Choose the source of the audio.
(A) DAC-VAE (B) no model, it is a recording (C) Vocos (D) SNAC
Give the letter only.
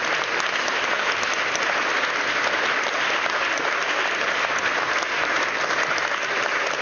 B